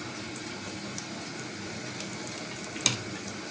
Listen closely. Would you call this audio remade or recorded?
recorded